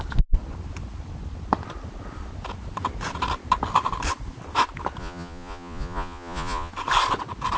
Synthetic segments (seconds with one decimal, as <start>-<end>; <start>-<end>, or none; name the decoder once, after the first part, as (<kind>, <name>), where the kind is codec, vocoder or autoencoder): 5.0-6.7 (vocoder, Vocos)